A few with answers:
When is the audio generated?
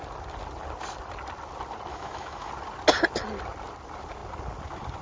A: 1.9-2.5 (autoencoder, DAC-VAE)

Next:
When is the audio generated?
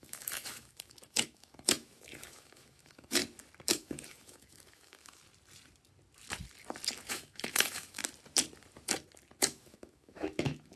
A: 0.0-3.2 (autoencoder, DAC-VAE); 3.7-5.2; 7.1-8.0; 9.4-10.8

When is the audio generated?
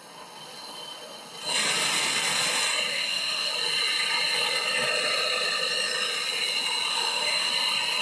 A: 2.9-3.5 (autoencoder, DAC-VAE); 6.9-7.5